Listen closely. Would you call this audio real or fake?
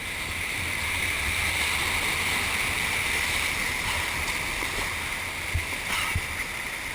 real